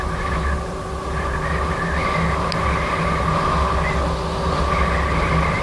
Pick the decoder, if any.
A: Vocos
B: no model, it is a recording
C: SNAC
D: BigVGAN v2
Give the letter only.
B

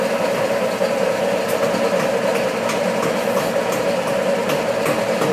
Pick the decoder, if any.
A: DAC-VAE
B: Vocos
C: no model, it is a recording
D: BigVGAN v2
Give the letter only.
C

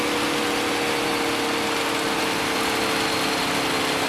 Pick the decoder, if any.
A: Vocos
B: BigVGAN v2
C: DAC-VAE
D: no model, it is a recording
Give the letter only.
D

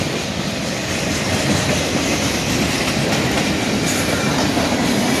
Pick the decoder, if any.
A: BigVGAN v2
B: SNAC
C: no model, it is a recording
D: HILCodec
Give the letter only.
C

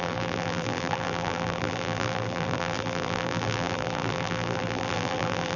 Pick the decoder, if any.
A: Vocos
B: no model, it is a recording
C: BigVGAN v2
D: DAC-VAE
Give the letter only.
C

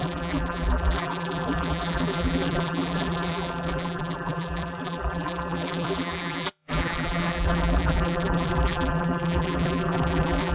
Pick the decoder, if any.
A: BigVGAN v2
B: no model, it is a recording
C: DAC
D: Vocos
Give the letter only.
A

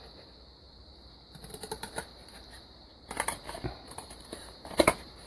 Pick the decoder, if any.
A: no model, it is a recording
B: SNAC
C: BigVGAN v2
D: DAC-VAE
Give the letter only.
C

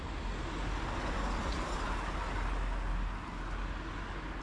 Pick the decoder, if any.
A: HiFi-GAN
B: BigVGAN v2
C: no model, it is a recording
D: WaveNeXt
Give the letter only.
C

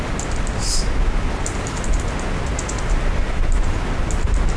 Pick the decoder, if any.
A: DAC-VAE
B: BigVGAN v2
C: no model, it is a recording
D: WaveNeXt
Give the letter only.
C